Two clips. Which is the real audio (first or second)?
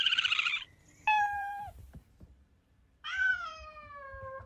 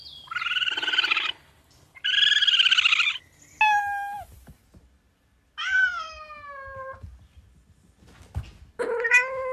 second